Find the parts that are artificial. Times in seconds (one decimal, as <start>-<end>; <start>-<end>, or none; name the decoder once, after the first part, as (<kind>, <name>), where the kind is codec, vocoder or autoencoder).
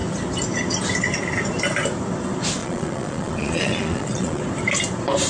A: 2.6-4.4 (vocoder, Vocos)